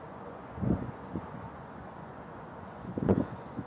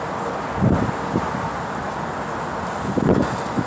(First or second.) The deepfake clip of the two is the first